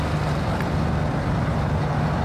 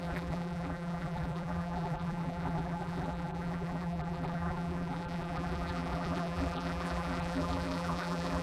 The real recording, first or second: first